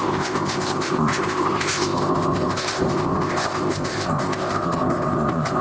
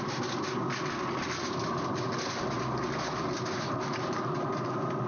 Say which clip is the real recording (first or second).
second